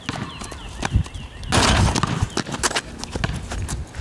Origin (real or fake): real